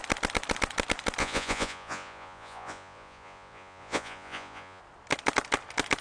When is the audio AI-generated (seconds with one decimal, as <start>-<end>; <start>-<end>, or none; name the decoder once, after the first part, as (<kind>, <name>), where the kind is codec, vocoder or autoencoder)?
1.2-4.8 (vocoder, Vocos)